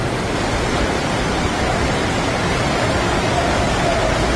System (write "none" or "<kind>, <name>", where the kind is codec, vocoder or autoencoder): none